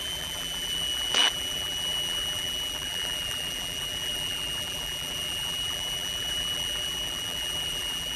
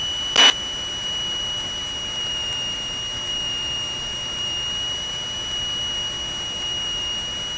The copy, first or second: first